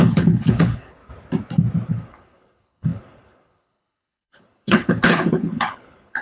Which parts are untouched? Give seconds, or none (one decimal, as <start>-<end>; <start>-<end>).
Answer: 1.0-1.9